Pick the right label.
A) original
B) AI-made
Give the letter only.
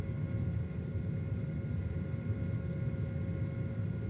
A